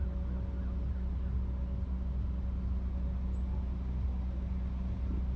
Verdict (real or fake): real